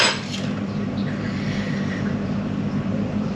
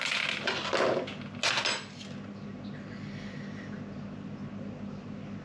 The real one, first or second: second